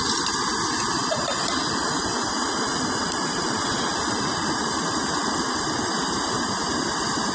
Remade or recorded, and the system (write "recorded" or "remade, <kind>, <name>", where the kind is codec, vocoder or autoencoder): recorded